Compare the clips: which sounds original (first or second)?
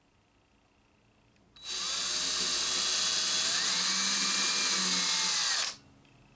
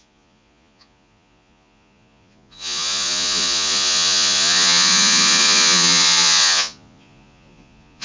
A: first